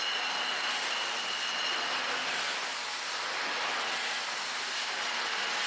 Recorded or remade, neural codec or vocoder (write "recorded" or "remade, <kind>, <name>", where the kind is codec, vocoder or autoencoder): recorded